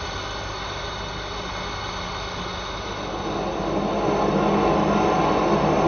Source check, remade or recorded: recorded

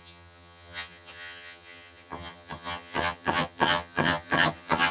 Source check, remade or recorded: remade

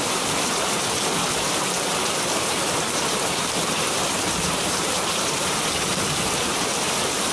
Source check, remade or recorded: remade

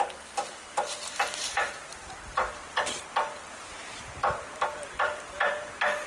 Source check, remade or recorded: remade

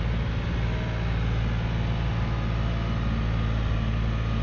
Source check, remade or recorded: recorded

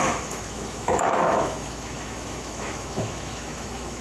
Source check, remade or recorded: remade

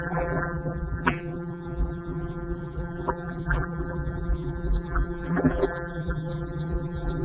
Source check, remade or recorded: remade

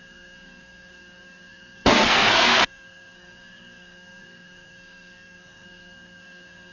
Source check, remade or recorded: remade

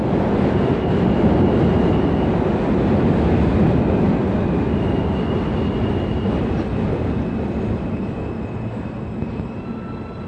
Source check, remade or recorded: recorded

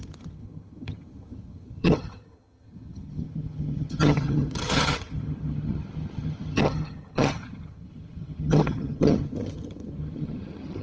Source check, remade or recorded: remade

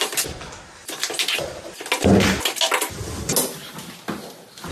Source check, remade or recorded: recorded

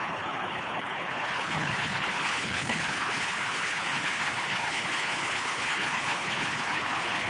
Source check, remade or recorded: remade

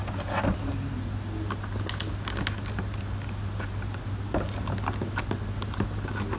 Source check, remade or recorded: recorded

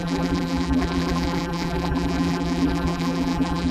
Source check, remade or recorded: remade